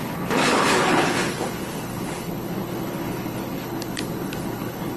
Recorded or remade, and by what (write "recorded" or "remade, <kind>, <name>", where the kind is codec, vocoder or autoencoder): remade, codec, HILCodec